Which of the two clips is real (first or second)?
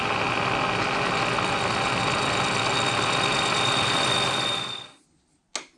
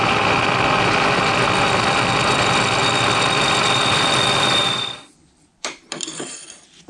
first